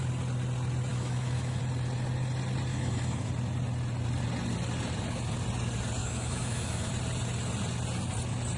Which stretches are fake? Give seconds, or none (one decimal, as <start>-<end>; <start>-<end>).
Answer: 0.9-1.6; 2.7-3.3; 6.0-6.9